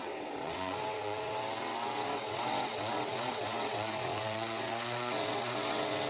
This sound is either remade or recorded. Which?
remade